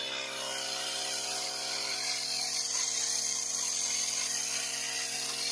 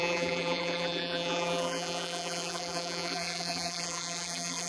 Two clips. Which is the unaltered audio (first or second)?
first